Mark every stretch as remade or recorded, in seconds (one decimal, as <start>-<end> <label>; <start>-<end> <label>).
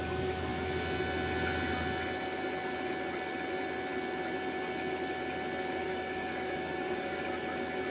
0.0-5.8 recorded; 5.8-7.2 remade; 7.2-7.9 recorded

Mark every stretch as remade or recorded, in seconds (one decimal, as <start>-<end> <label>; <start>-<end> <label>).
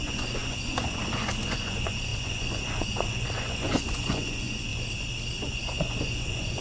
0.0-4.7 remade; 4.7-5.4 recorded; 5.4-6.6 remade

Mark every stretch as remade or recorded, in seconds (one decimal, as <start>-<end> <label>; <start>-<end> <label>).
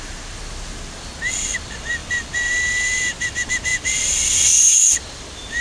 0.0-5.6 recorded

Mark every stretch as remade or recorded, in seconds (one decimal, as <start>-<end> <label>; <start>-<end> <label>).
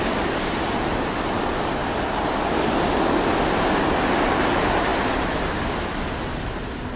0.0-7.0 recorded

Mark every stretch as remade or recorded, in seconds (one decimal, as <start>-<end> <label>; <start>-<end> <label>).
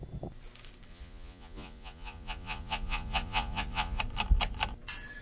0.0-0.9 recorded; 0.9-4.0 remade; 4.0-5.2 recorded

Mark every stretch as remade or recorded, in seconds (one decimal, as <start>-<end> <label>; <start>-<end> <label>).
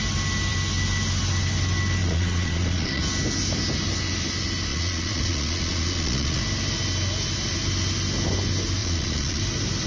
0.0-2.0 recorded; 2.0-3.0 remade; 3.0-4.7 recorded; 4.7-6.4 remade; 6.4-8.8 recorded; 8.8-9.4 remade; 9.4-9.9 recorded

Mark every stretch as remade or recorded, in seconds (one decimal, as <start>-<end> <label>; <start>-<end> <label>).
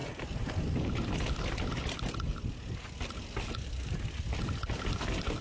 0.0-5.4 recorded